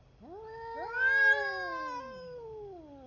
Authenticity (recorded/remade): recorded